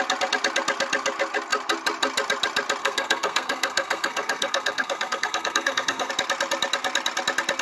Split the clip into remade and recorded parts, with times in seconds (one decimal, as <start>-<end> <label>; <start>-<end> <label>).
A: 0.0-2.8 recorded; 2.8-6.1 remade; 6.1-7.6 recorded

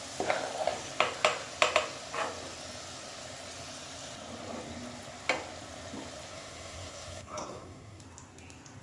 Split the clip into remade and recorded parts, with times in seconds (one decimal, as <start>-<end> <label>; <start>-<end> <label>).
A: 0.0-6.3 recorded; 6.3-8.0 remade; 8.0-8.8 recorded